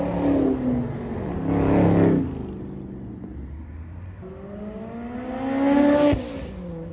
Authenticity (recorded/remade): recorded